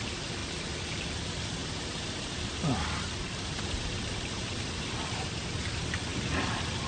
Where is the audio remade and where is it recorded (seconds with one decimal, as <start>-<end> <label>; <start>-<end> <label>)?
0.0-1.6 recorded; 1.6-5.3 remade; 5.3-6.9 recorded